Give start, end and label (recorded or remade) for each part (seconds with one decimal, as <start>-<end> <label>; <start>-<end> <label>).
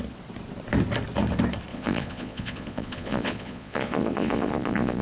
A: 0.0-1.7 recorded; 1.7-5.0 remade